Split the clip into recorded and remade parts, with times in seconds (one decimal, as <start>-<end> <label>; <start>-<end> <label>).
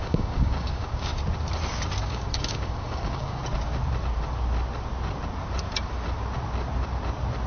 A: 0.0-1.1 remade; 1.1-2.0 recorded; 2.0-3.4 remade; 3.4-7.5 recorded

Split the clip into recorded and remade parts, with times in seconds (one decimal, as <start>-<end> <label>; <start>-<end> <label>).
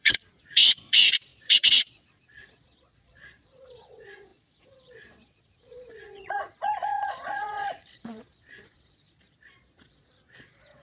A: 0.0-10.8 remade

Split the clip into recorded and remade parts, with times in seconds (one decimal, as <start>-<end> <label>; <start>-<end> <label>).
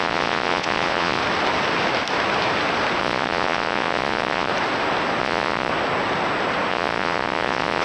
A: 0.0-1.2 remade; 1.2-3.0 recorded; 3.0-4.5 remade; 4.5-5.2 recorded; 5.2-5.7 remade; 5.7-6.7 recorded; 6.7-7.8 remade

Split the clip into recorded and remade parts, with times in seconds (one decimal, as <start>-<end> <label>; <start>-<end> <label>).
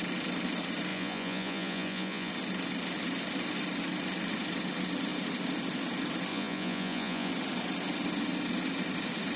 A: 0.0-0.9 recorded; 0.9-2.3 remade; 2.3-6.3 recorded; 6.3-7.3 remade; 7.3-9.4 recorded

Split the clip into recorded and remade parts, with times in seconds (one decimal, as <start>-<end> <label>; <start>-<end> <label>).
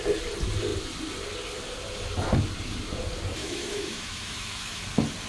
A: 0.0-3.4 recorded; 3.4-4.8 remade; 4.8-5.3 recorded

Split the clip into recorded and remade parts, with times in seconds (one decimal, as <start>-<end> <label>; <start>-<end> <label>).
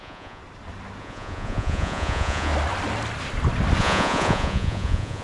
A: 0.0-0.4 remade; 0.4-1.0 recorded; 1.0-2.5 remade; 2.5-3.8 recorded; 3.8-5.2 remade